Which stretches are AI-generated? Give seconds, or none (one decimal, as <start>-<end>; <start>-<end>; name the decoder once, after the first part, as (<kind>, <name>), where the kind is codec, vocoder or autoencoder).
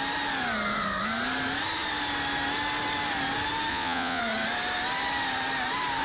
3.7-4.2 (vocoder, Vocos)